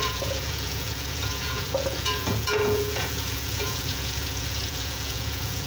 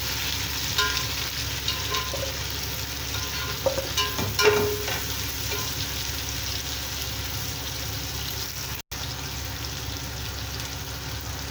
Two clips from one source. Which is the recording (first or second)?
second